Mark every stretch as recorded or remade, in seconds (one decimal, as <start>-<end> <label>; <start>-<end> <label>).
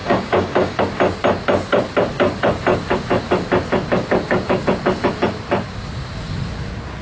0.0-0.8 remade; 0.8-7.0 recorded